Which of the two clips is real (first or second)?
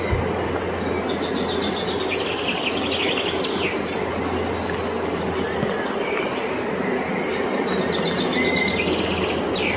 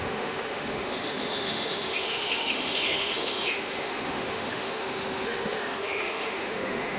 first